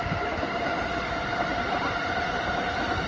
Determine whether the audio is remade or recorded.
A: remade